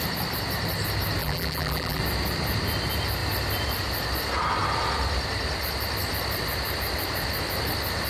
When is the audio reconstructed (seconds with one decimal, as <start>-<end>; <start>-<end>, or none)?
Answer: 1.2-2.0